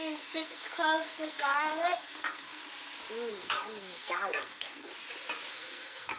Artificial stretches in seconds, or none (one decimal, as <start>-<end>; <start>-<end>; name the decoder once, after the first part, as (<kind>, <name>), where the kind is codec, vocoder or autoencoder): 0.0-2.6 (codec, SNAC); 3.3-4.9; 5.5-6.2